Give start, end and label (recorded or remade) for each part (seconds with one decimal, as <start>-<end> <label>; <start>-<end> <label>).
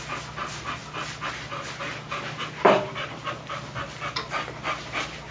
0.0-0.8 recorded; 0.8-1.5 remade; 1.5-1.9 recorded; 1.9-3.3 remade; 3.3-5.3 recorded